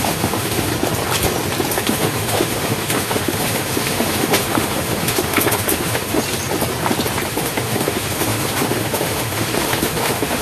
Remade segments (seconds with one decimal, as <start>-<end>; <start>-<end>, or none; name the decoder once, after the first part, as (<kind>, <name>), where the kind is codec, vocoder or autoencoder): 0.0-0.7 (autoencoder, DAC-VAE); 1.7-6.2; 7.3-10.4

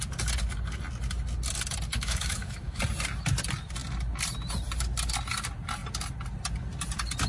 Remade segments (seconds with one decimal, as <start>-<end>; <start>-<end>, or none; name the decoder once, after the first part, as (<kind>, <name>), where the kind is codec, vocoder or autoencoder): 1.9-2.8 (autoencoder, DAC-VAE)

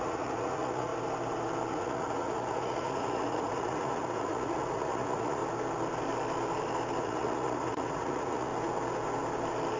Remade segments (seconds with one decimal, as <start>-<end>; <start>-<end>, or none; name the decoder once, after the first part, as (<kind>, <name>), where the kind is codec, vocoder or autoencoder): 0.0-0.9 (vocoder, Vocos); 1.7-5.4; 7.0-8.5

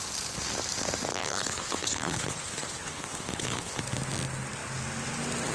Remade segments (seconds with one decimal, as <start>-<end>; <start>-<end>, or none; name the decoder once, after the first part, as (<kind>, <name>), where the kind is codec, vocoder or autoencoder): 1.2-3.8 (codec, HILCodec)

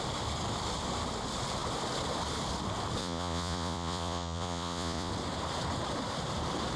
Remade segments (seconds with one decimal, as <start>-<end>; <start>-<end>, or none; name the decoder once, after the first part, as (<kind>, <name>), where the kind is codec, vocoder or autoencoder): 3.0-5.1 (vocoder, Vocos)

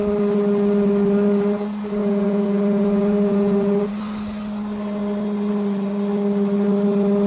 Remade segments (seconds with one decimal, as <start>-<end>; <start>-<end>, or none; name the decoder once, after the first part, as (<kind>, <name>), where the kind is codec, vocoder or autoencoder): 2.0-3.9 (vocoder, Vocos)